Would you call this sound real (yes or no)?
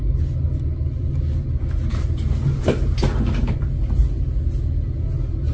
yes